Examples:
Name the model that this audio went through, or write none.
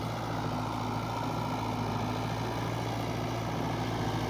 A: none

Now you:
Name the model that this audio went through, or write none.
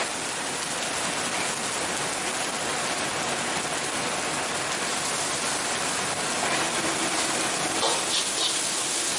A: none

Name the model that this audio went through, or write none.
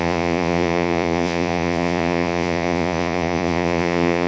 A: vocoder, Vocos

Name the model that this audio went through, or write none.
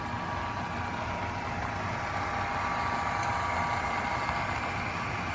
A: none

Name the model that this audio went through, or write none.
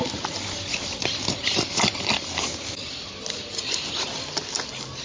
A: none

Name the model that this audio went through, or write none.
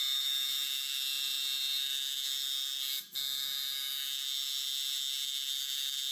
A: autoencoder, DAC-VAE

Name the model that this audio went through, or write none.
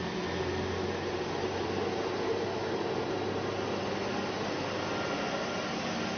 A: none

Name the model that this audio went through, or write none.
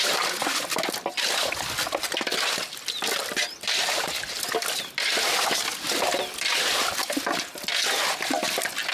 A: none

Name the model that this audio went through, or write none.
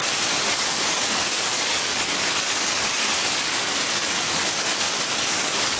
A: codec, DAC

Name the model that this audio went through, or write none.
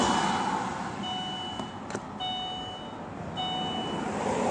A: none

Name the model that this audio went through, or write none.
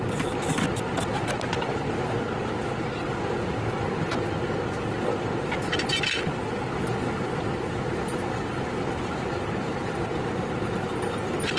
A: none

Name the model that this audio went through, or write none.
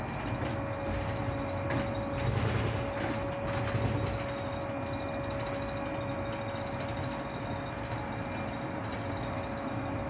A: none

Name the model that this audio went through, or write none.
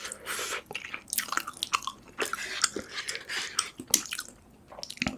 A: none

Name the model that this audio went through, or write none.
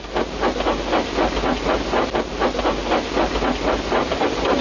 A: none